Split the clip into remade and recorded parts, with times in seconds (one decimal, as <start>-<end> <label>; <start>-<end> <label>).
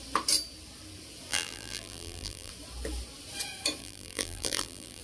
0.0-1.3 recorded; 1.3-2.5 remade; 2.5-3.8 recorded; 3.8-5.0 remade